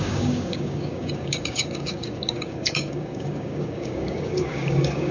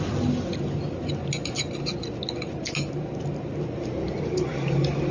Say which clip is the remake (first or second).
first